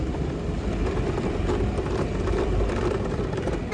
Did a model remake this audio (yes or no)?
yes